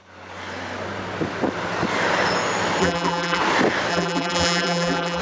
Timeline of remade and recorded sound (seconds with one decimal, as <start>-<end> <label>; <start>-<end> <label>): 0.0-2.8 recorded; 2.8-3.4 remade; 3.4-3.9 recorded; 3.9-5.2 remade